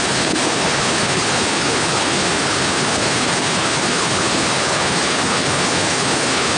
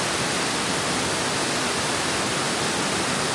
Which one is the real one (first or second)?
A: second